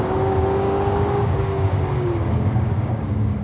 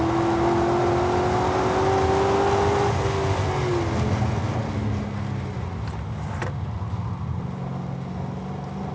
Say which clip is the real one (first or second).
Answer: second